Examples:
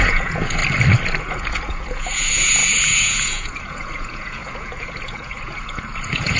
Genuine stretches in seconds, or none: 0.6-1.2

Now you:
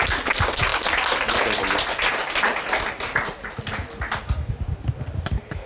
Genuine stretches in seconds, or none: 0.0-5.7

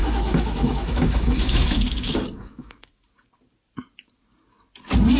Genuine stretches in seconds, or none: 3.1-5.2

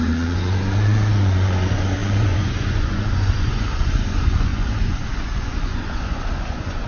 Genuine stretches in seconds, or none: none

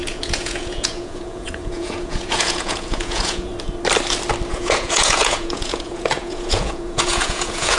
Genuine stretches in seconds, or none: 3.5-4.5

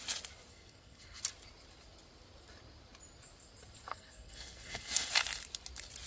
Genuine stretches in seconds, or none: 0.0-0.5; 1.2-3.9; 5.1-6.1

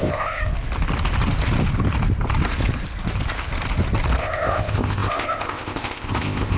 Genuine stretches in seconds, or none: 0.4-4.2